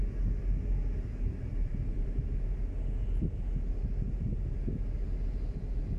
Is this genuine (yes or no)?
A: yes